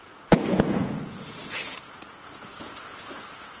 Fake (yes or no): yes